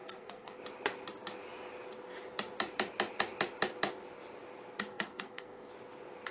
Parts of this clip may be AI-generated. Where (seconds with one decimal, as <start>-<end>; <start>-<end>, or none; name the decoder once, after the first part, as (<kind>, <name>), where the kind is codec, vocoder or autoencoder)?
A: 0.0-0.6 (codec, SNAC); 4.9-5.7